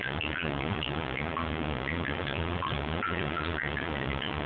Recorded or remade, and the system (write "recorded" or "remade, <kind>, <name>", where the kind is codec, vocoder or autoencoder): remade, vocoder, Vocos